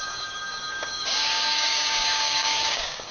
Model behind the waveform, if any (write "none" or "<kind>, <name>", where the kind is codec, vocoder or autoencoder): codec, DAC